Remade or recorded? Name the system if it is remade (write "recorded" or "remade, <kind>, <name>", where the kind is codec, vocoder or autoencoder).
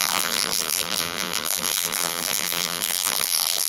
remade, vocoder, BigVGAN v2